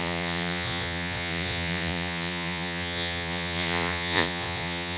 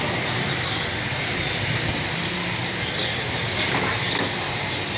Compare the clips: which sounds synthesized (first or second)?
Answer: first